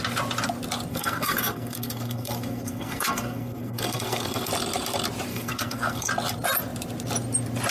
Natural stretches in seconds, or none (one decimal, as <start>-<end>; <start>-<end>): 0.0-0.9; 4.5-5.3; 6.1-7.7